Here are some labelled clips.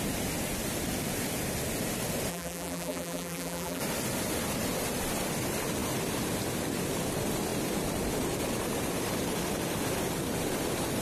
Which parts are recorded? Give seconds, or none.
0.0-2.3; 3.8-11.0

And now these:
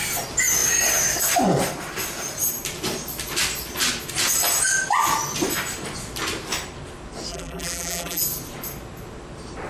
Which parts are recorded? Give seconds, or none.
0.0-7.3; 8.2-9.7

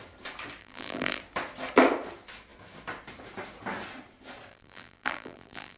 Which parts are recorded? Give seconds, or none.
0.0-0.6; 1.2-4.5

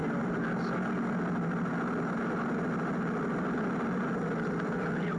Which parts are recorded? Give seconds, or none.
0.0-5.2

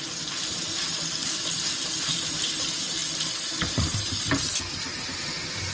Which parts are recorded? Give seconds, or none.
1.2-2.1; 3.0-3.7